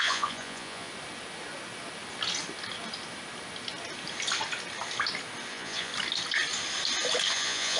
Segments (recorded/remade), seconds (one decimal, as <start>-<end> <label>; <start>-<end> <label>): 0.0-0.9 remade; 0.9-5.5 recorded; 5.5-5.9 remade; 5.9-7.3 recorded; 7.3-7.8 remade

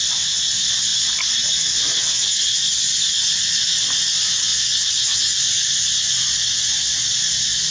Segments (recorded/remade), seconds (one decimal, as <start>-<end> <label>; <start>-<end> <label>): 0.0-7.7 recorded

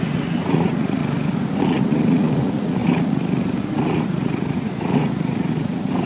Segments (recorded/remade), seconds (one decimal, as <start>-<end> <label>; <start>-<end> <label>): 0.0-1.0 remade; 1.0-1.6 recorded; 1.6-6.1 remade

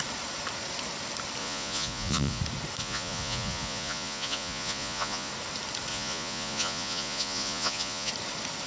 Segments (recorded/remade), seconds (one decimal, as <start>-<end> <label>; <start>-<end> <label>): 0.0-1.4 recorded; 1.4-2.4 remade; 2.4-2.8 recorded; 2.8-5.3 remade; 5.3-5.9 recorded; 5.9-8.1 remade; 8.1-8.7 recorded

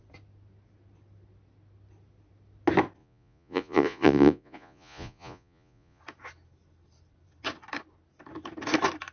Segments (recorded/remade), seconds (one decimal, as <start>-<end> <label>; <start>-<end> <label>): 0.0-3.0 recorded; 3.0-6.0 remade; 6.0-9.1 recorded

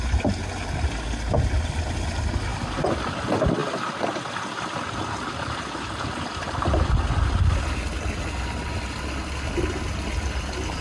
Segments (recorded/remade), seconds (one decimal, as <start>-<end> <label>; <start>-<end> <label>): 0.0-10.8 recorded

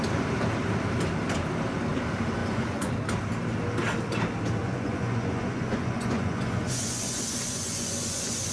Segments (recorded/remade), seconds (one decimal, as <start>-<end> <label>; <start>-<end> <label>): 0.0-2.4 recorded; 2.4-2.9 remade; 2.9-4.6 recorded; 4.6-8.5 remade

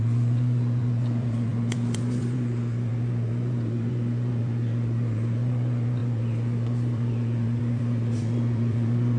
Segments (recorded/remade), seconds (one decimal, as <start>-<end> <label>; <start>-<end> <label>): 0.0-9.2 remade